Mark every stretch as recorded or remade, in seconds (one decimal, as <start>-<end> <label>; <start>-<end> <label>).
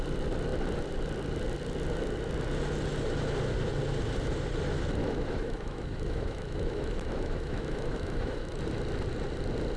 0.0-5.0 recorded; 5.0-8.6 remade; 8.6-9.8 recorded